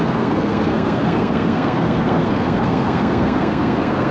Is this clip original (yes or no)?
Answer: no